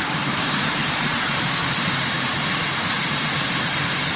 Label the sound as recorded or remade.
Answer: remade